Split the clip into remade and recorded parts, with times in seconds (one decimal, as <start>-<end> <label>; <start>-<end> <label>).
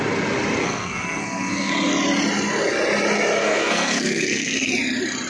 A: 0.0-0.6 recorded; 0.6-1.7 remade; 1.7-3.4 recorded; 3.4-4.7 remade; 4.7-5.3 recorded